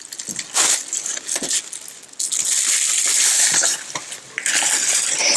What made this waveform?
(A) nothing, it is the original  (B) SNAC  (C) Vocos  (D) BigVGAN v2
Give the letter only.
A